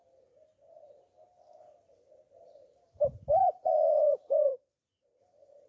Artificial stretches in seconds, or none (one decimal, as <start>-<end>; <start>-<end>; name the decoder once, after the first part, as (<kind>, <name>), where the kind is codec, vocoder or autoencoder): 3.4-4.5 (vocoder, Vocos); 5.2-5.7

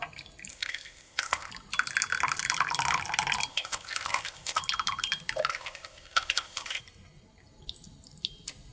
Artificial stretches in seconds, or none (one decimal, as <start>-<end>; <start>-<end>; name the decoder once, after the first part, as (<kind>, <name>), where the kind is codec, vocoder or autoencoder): 0.5-1.5 (codec, ZipCodec); 3.5-4.6; 5.5-6.8

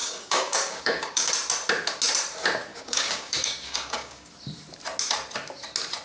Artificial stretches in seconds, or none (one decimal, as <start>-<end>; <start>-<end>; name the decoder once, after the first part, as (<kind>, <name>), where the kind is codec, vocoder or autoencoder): 0.0-1.3 (codec, DAC); 2.7-4.3

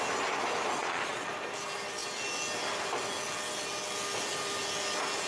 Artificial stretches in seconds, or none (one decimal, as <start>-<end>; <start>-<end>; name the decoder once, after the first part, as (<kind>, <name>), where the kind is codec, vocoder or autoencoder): 0.8-1.3 (vocoder, Vocos)